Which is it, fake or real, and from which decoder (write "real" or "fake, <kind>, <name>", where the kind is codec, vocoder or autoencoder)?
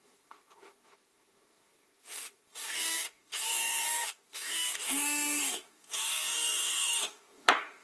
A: fake, codec, DAC